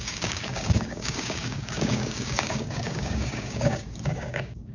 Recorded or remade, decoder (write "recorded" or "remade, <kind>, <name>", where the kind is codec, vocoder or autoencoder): remade, codec, DAC